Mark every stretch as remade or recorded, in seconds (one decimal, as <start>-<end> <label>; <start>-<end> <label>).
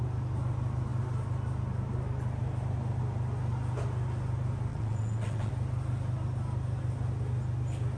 0.0-4.7 recorded; 4.7-5.5 remade; 5.5-8.0 recorded